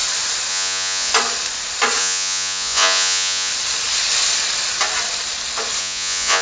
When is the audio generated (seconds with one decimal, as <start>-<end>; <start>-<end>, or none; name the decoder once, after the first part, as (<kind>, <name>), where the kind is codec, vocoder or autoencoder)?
0.5-1.1 (vocoder, Vocos); 2.0-3.5; 5.8-6.4